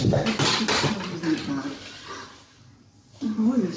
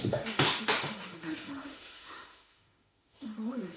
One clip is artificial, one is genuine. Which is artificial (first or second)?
second